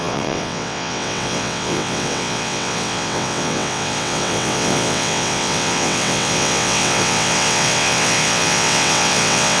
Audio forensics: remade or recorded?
remade